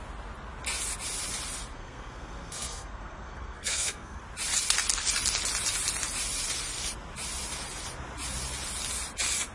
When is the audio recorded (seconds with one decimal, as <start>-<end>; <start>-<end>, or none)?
0.0-1.7; 4.2-9.5